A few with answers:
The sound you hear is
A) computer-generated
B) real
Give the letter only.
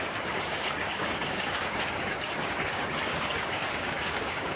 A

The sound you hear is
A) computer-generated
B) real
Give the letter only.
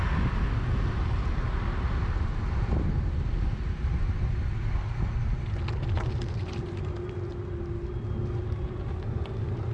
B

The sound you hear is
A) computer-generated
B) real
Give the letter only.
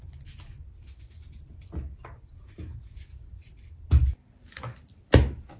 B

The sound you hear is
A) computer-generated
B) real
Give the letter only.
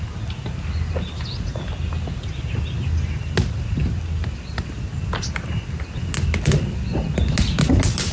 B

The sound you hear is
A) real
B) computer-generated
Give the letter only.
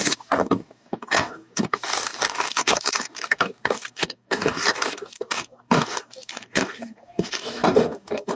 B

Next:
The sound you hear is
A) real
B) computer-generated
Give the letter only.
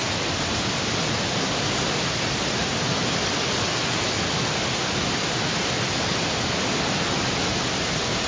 A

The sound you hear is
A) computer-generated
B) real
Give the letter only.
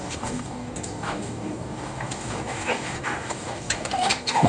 A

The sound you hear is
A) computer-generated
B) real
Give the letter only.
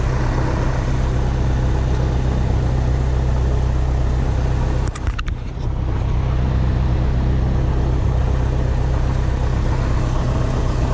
B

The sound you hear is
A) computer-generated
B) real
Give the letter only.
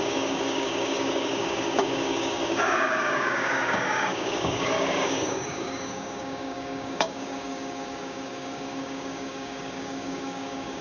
A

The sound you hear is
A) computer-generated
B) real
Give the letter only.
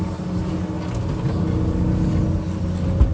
B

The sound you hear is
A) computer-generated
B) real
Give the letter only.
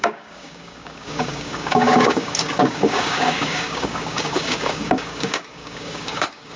A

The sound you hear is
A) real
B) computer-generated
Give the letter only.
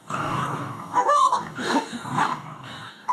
B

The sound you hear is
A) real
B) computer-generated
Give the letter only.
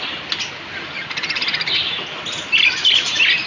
A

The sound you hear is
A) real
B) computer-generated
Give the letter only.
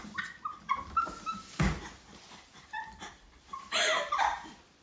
A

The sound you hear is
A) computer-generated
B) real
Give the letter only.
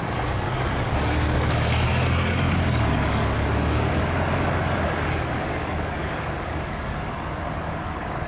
A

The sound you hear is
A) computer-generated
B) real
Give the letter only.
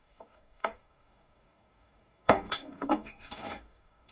A